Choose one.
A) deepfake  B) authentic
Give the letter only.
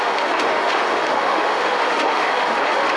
A